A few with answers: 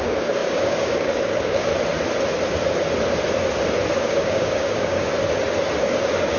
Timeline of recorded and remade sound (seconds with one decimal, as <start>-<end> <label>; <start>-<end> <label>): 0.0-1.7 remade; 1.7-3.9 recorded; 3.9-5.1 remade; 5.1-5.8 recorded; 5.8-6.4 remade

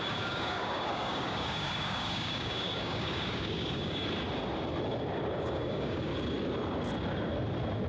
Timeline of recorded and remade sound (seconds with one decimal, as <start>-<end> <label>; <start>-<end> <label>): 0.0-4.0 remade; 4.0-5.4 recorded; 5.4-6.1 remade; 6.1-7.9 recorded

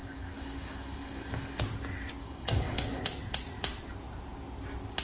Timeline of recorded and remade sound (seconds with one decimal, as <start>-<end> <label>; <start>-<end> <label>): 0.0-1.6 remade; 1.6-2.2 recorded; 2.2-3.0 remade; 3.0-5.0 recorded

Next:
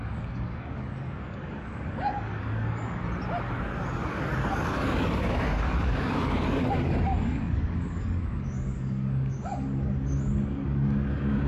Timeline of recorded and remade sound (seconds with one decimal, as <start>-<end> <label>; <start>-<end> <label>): 0.0-3.0 remade; 3.0-4.1 recorded; 4.1-11.5 remade

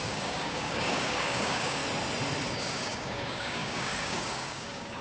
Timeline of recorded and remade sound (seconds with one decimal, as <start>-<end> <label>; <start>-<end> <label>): 0.0-1.8 remade; 1.8-2.5 recorded; 2.5-5.0 remade